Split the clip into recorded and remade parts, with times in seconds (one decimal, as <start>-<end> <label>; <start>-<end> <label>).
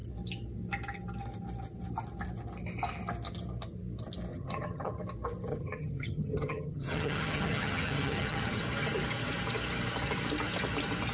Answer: 0.0-4.3 recorded; 4.3-5.0 remade; 5.0-5.5 recorded; 5.5-8.6 remade; 8.6-11.1 recorded